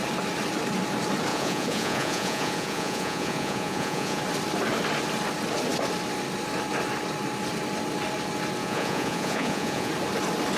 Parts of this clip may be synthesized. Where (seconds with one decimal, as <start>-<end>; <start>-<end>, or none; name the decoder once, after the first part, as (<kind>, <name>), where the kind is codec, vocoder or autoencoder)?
1.3-4.2 (vocoder, Vocos); 8.6-9.9